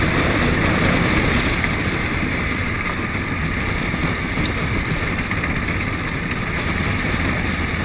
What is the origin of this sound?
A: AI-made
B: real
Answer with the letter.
B